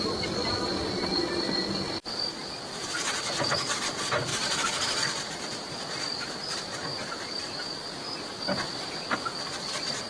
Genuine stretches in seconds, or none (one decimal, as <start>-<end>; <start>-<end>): 0.0-10.1